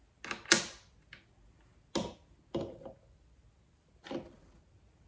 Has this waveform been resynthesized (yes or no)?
no